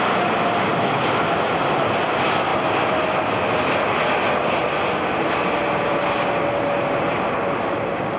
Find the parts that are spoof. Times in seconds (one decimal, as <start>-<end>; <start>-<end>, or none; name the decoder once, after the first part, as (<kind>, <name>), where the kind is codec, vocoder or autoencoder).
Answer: none